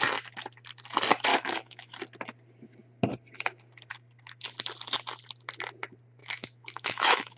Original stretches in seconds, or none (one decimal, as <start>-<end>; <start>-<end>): 0.0-1.3; 2.0-6.2